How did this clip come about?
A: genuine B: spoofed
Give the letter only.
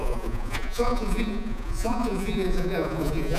B